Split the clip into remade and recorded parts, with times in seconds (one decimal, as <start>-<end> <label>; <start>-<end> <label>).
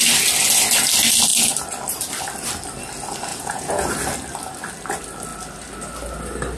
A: 0.0-3.3 recorded; 3.3-3.9 remade; 3.9-6.6 recorded